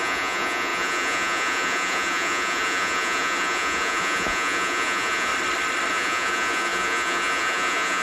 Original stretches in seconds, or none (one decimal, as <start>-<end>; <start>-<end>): 5.3-5.9